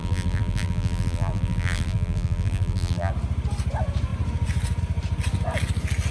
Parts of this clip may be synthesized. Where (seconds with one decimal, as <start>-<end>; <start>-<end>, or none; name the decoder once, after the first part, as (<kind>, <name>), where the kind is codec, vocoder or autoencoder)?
0.0-3.1 (vocoder, BigVGAN v2)

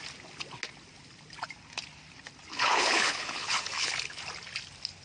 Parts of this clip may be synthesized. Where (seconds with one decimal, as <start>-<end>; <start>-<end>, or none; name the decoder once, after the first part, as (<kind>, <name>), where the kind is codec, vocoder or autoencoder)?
2.5-4.2 (codec, HILCodec)

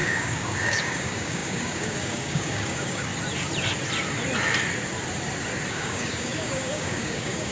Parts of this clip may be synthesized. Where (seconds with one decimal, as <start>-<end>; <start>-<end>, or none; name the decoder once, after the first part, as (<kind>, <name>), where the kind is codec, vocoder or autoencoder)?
0.0-3.1 (codec, DAC); 5.7-7.5

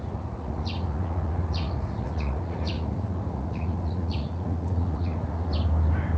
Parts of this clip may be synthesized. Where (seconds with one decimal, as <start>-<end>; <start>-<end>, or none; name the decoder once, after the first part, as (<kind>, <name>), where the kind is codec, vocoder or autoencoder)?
0.0-5.5 (vocoder, Vocos)

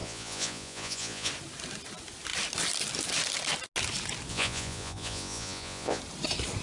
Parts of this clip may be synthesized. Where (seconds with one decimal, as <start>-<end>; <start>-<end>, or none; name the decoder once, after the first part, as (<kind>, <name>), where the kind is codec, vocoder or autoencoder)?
0.0-1.3 (vocoder, Vocos); 4.3-6.0

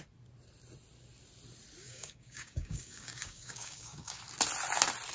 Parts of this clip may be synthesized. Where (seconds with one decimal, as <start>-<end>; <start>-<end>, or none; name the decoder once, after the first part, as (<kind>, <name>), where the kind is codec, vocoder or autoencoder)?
1.8-4.2 (codec, DAC)

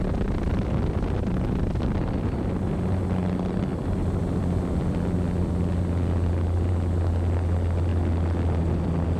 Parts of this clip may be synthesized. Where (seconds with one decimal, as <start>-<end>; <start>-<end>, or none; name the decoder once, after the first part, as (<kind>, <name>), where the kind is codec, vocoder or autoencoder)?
none

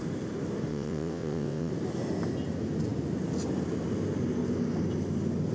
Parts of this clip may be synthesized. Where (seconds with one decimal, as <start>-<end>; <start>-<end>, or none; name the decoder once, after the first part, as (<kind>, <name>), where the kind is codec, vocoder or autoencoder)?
0.7-1.7 (vocoder, WaveNeXt)